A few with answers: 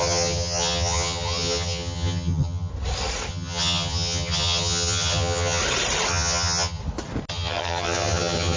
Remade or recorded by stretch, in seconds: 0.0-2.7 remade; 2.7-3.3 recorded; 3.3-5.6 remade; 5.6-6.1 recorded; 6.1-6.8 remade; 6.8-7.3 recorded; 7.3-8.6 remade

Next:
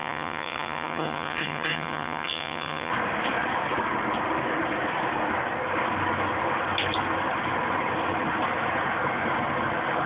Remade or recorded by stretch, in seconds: 0.0-2.9 remade; 2.9-10.1 recorded

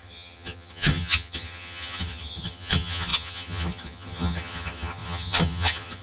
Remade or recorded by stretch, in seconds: 0.0-6.0 remade

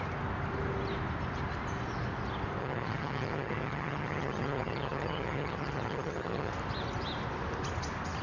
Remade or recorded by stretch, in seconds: 0.0-2.6 recorded; 2.6-6.5 remade; 6.5-8.2 recorded

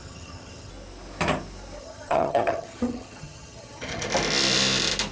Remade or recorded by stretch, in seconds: 0.0-0.7 remade; 0.7-1.8 recorded; 1.8-4.1 remade; 4.1-5.1 recorded

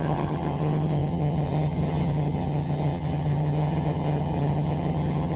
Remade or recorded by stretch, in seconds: 0.0-5.4 remade